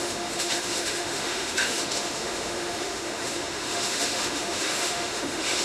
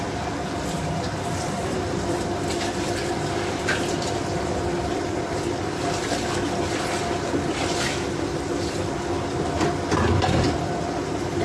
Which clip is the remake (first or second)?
first